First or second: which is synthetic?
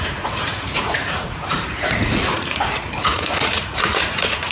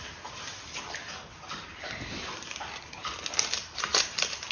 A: first